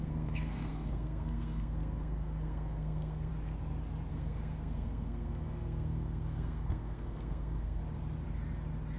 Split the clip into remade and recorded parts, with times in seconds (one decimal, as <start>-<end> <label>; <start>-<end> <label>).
0.0-3.3 remade; 3.3-4.1 recorded; 4.1-7.8 remade; 7.8-9.0 recorded